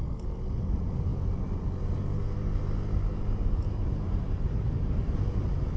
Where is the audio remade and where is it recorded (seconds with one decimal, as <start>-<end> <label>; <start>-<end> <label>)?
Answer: 0.0-3.1 recorded; 3.1-4.7 remade; 4.7-5.8 recorded